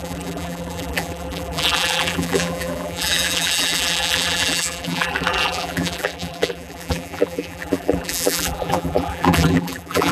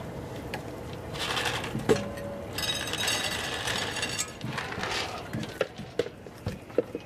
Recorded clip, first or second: second